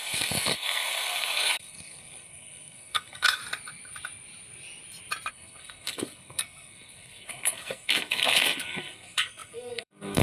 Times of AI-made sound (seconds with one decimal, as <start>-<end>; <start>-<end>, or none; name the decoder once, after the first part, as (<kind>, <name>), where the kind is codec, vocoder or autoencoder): 0.0-3.4 (codec, SNAC); 5.3-10.2

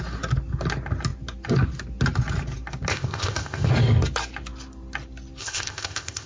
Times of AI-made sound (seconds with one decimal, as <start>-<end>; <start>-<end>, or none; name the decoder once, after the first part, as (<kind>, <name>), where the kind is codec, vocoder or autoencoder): 2.9-3.7 (codec, ZipCodec); 5.4-6.3

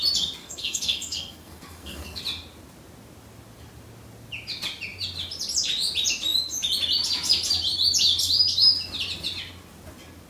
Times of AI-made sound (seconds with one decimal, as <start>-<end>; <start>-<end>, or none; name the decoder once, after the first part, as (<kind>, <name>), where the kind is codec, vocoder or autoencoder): 0.4-2.2 (codec, SNAC)

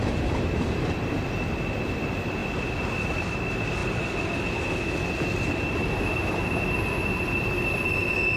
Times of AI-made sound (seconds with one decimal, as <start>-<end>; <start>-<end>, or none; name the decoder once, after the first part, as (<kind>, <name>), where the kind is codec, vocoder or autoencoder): none

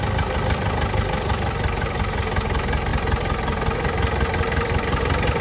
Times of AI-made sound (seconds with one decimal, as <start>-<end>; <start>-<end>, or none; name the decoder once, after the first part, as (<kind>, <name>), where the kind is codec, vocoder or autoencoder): none